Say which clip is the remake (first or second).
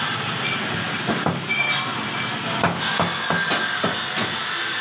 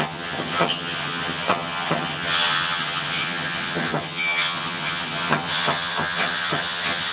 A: second